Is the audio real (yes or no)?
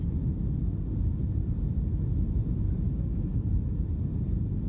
yes